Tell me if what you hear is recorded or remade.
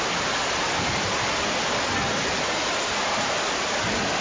recorded